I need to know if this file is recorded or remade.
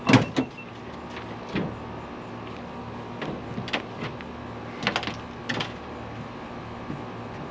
recorded